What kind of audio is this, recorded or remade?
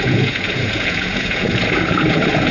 remade